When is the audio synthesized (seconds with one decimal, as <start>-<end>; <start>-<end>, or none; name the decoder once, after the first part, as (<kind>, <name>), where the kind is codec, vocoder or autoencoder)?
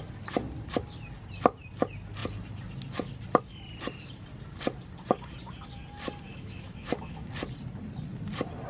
6.3-7.3 (autoencoder, DAC-VAE)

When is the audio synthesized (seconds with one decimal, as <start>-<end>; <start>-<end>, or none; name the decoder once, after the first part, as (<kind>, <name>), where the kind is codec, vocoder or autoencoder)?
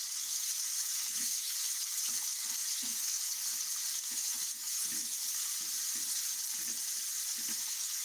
0.0-3.4 (autoencoder, DAC-VAE); 4.1-5.2; 7.5-8.0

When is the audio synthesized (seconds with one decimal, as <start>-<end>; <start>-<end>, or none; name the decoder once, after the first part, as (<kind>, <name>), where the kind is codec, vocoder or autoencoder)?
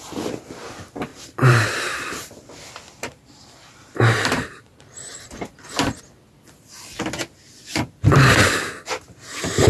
1.1-6.0 (vocoder, BigVGAN v2)